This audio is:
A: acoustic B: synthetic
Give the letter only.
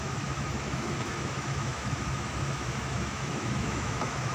B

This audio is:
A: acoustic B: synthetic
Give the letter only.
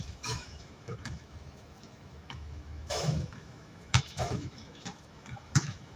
B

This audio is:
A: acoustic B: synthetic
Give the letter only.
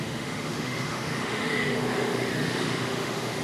B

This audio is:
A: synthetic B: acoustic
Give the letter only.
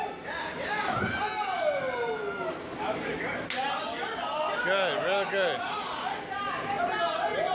B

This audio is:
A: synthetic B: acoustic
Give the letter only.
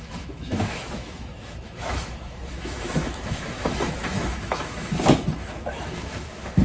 A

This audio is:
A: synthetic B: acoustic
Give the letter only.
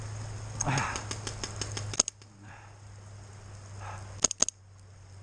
B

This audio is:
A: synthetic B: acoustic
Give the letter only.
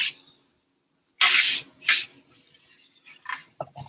B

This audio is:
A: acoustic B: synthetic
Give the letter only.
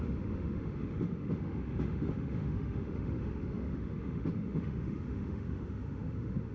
B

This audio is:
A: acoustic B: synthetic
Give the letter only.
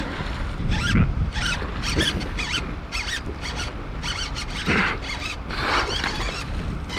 A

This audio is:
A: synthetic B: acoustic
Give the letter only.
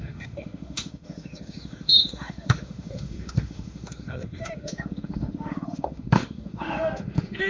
A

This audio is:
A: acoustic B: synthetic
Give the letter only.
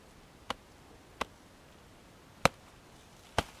A